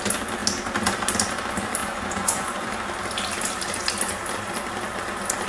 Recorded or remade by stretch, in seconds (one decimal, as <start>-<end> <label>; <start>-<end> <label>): 0.0-1.8 recorded; 1.8-2.7 remade; 2.7-5.5 recorded